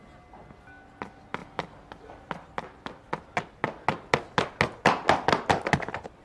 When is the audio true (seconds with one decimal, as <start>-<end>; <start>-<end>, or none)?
0.0-6.2